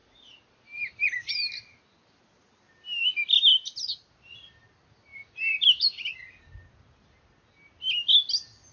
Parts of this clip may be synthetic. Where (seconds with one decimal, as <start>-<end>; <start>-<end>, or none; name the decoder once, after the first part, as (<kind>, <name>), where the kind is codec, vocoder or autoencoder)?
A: 0.0-1.3 (vocoder, BigVGAN v2); 5.1-6.1